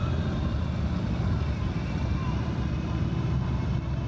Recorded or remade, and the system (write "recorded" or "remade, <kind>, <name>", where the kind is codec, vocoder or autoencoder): recorded